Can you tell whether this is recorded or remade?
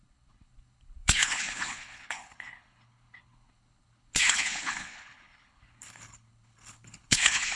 remade